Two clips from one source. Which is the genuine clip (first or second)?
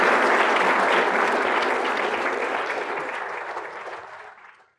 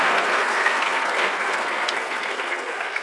first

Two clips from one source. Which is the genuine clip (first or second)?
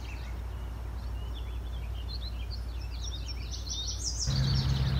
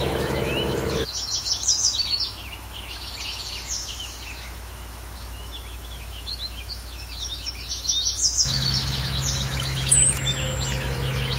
first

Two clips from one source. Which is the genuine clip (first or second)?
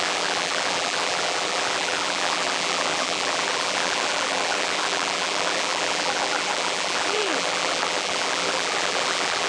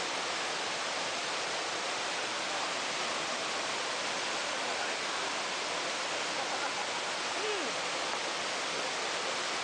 second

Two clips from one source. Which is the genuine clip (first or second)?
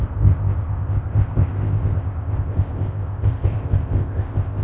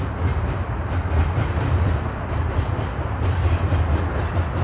second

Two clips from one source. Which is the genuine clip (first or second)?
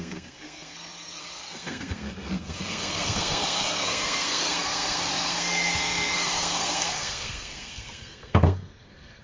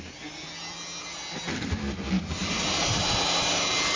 second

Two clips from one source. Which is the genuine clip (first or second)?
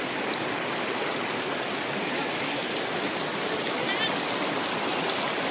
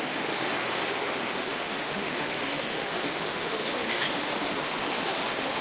first